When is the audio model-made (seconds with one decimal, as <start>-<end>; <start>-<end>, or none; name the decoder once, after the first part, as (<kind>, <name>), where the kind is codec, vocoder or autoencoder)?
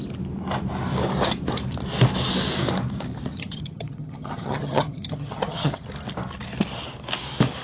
3.3-5.8 (vocoder, HiFi-GAN)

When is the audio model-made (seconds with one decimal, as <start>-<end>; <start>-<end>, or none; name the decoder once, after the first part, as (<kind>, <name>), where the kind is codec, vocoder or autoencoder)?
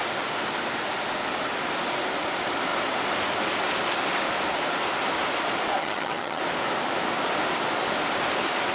5.8-6.4 (vocoder, HiFi-GAN)